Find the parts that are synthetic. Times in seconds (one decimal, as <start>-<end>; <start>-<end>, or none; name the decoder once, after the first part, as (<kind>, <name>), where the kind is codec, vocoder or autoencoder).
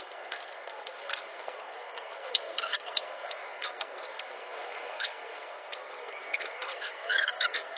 0.0-7.8 (codec, SNAC)